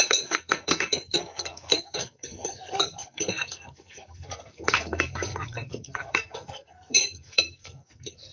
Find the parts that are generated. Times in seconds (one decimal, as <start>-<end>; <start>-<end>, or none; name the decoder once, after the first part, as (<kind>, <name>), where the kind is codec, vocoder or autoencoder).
0.0-8.3 (codec, SNAC)